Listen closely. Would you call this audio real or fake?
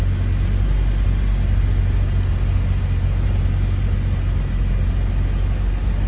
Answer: real